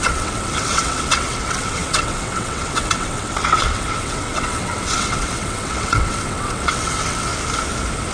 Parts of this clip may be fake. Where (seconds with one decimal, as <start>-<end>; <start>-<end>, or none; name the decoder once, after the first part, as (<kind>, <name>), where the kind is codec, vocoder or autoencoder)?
0.0-7.3 (vocoder, WaveNeXt)